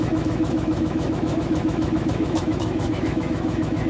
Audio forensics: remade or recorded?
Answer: remade